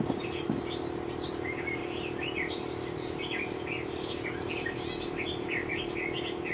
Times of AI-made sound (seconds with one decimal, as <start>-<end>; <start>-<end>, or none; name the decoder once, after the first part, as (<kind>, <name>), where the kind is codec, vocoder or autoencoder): none